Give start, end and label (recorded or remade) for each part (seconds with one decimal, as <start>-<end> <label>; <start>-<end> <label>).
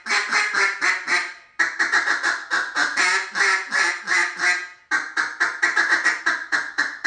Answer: 0.0-1.1 recorded; 1.1-3.0 remade; 3.0-7.1 recorded